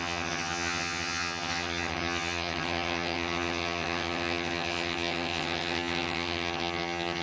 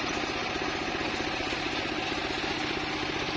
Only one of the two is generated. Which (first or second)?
first